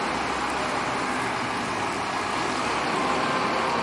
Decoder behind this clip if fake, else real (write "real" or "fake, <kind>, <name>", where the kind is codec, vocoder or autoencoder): real